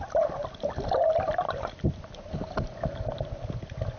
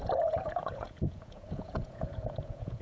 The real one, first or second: first